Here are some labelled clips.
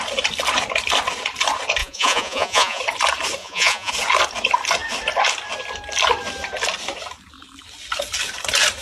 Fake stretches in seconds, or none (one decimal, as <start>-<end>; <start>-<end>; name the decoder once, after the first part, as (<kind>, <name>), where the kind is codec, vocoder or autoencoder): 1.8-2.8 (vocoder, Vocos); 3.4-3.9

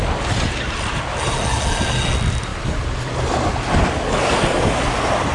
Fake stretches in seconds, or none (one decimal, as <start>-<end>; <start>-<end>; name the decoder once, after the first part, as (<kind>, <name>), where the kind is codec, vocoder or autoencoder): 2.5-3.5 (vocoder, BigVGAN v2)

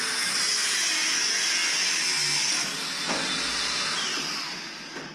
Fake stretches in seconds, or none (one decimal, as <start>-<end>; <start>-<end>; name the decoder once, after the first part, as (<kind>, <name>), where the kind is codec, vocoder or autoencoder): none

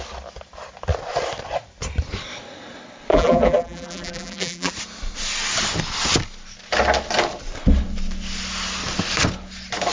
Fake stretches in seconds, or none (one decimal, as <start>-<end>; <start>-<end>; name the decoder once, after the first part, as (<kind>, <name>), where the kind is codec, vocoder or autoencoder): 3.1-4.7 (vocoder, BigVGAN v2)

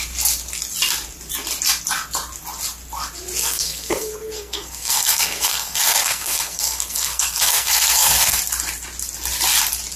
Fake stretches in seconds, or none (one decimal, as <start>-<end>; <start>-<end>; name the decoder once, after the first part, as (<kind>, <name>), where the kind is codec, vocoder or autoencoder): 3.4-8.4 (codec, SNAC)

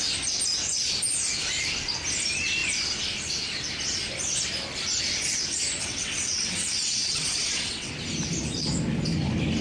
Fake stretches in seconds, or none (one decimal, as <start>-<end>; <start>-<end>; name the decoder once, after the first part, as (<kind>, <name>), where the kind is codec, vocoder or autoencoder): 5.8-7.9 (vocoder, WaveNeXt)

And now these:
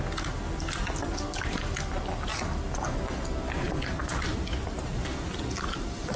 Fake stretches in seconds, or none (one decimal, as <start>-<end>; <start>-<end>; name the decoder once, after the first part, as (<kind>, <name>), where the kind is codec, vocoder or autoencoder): none